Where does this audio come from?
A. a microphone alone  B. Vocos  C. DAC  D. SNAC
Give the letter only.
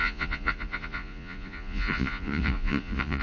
B